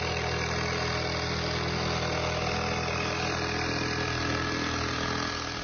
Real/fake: real